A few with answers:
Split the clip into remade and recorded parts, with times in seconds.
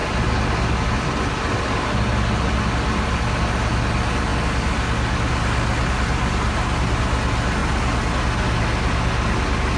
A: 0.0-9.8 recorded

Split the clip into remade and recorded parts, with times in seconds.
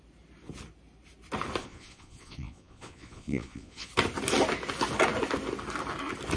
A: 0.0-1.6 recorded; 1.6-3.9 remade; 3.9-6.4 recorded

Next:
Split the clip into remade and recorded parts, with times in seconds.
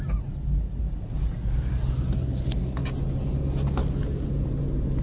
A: 0.0-5.0 recorded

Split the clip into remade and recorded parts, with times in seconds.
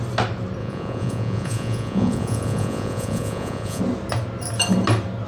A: 0.0-0.6 recorded; 0.6-3.8 remade; 3.8-5.3 recorded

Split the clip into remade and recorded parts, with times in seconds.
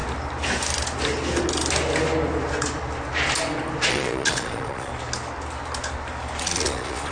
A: 0.0-3.9 recorded; 3.9-4.9 remade; 4.9-6.4 recorded; 6.4-7.1 remade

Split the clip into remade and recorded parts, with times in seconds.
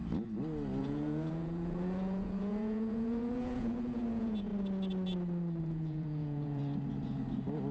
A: 0.0-0.8 recorded; 0.8-4.5 remade; 4.5-5.6 recorded; 5.6-6.6 remade; 6.6-7.7 recorded